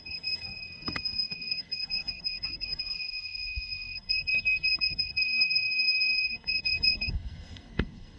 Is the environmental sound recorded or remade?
remade